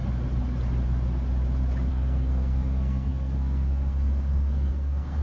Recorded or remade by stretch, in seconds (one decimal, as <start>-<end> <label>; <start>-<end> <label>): 0.0-1.9 recorded; 1.9-5.2 remade